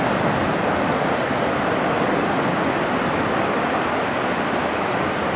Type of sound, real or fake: real